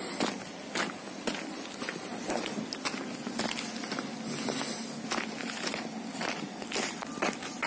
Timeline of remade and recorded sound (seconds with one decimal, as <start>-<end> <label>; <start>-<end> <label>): 0.0-7.7 recorded